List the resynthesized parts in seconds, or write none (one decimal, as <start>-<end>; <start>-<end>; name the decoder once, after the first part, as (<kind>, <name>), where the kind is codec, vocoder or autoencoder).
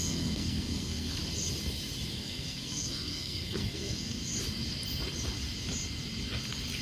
0.0-1.2 (codec, SNAC); 2.1-4.2